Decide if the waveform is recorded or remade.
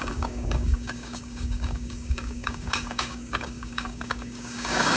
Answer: remade